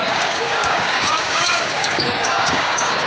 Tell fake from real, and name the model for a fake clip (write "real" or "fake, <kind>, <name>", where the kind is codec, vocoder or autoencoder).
fake, codec, DAC